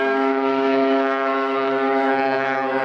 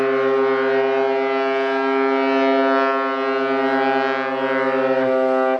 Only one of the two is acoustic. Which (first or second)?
second